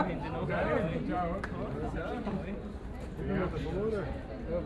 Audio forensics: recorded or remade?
recorded